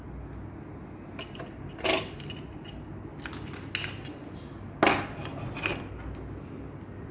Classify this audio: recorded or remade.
recorded